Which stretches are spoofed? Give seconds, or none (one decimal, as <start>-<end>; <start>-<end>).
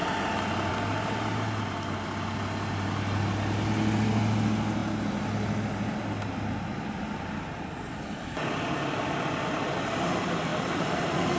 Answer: 10.5-11.4